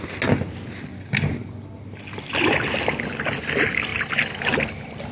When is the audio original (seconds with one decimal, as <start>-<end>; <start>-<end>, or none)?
0.0-5.1